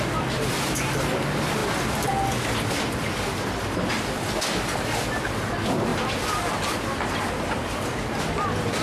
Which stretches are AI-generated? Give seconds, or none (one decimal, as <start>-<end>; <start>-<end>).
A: none